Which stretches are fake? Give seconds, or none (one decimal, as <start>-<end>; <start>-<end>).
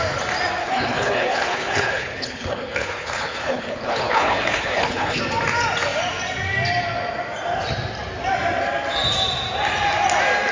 0.6-5.2